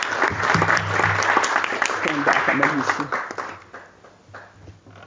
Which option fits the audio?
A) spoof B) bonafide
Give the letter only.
B